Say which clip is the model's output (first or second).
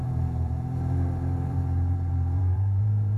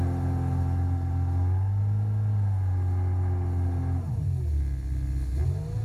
first